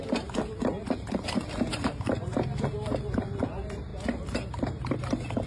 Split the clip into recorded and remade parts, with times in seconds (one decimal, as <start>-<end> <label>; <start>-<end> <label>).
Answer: 0.0-1.7 recorded; 1.7-3.4 remade; 3.4-5.5 recorded